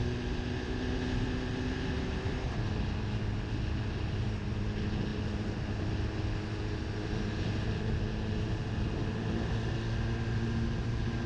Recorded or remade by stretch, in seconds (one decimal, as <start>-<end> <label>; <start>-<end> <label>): 0.0-11.3 recorded